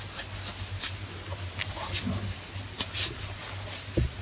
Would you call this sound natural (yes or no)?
yes